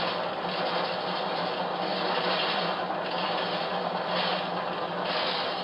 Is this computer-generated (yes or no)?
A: no